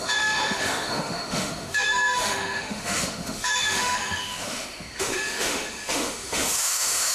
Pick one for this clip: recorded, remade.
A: remade